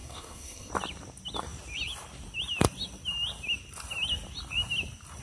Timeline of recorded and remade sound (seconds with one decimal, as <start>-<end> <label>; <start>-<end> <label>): 0.0-0.7 remade; 0.7-5.2 recorded